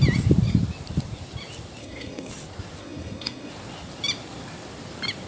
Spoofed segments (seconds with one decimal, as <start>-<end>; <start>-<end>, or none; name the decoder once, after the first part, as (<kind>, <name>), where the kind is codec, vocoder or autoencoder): 1.8-2.3 (codec, SNAC); 2.8-3.5